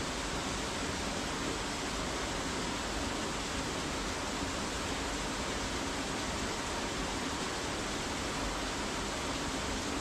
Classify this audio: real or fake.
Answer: real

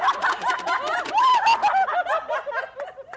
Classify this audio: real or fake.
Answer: real